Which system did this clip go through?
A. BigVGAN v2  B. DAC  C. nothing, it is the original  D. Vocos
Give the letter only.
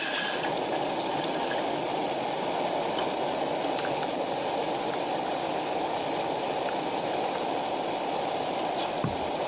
C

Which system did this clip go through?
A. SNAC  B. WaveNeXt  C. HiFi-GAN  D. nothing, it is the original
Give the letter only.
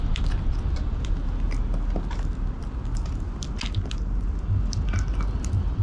D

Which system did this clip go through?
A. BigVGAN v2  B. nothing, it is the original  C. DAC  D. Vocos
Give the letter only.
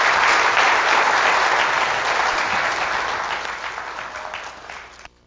B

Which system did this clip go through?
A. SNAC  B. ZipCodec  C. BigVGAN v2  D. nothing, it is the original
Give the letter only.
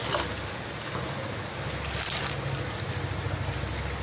D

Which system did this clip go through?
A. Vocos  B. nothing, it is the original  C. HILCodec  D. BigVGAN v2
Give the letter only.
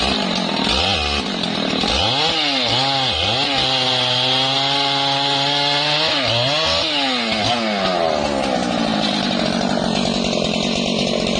B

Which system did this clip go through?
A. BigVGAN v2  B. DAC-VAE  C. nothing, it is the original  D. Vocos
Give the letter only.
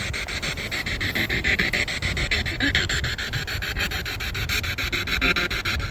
C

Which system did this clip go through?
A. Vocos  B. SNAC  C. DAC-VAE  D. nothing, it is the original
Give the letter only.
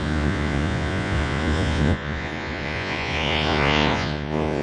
A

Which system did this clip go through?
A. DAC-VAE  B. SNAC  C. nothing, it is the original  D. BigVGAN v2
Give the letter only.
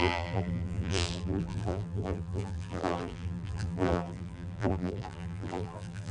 D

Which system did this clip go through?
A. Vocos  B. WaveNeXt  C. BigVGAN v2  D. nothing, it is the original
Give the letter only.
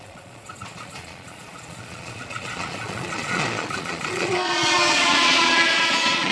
A